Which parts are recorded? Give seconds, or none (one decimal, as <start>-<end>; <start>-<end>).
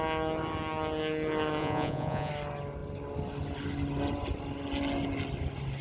0.0-1.6; 2.3-5.8